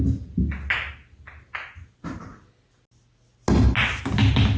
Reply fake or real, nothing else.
real